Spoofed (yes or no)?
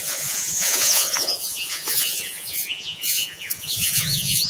yes